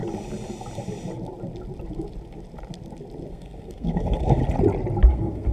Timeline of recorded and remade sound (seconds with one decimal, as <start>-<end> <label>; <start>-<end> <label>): 0.0-3.3 recorded; 3.3-4.4 remade; 4.4-5.1 recorded; 5.1-5.5 remade